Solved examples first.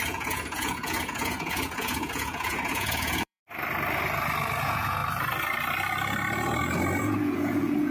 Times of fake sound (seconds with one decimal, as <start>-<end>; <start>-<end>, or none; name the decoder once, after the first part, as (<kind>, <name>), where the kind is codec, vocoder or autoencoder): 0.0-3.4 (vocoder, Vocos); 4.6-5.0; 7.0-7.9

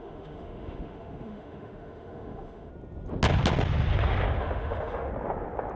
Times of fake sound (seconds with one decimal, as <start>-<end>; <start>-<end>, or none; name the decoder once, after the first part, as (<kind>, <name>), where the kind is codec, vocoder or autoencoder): 0.0-2.7 (autoencoder, DAC-VAE); 4.4-5.1

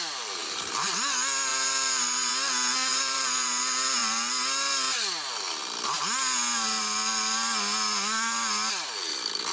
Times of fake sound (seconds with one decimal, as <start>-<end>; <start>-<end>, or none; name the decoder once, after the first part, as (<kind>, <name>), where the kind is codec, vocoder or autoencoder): 0.4-0.9 (vocoder, BigVGAN v2); 1.5-2.3; 2.9-3.6